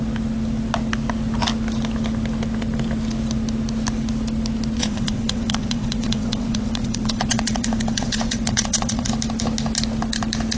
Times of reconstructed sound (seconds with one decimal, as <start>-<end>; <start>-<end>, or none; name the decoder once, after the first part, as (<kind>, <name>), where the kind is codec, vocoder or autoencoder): 4.8-9.1 (vocoder, WaveNeXt)